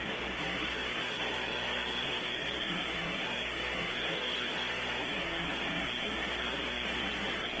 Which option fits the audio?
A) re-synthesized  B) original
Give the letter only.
A